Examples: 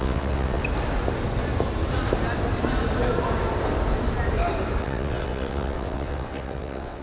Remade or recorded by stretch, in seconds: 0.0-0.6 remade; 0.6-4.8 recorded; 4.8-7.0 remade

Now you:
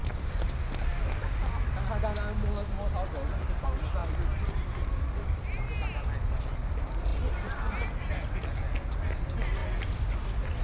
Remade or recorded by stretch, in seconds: 0.0-0.6 remade; 0.6-4.0 recorded; 4.0-5.7 remade; 5.7-10.6 recorded

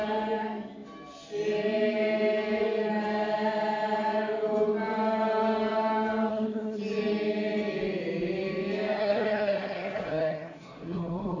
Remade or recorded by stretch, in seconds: 0.0-6.3 recorded; 6.3-6.8 remade; 6.8-9.0 recorded; 9.0-11.4 remade

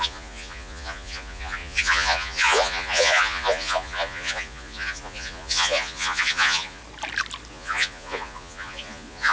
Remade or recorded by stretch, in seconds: 0.0-6.8 remade; 6.8-7.5 recorded; 7.5-9.3 remade

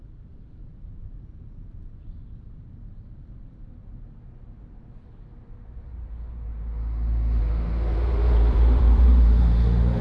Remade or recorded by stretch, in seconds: 0.0-6.5 remade; 6.5-7.4 recorded; 7.4-10.0 remade

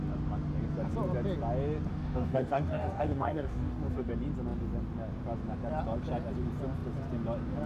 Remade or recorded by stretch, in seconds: 0.0-1.9 recorded; 1.9-4.1 remade; 4.1-7.7 recorded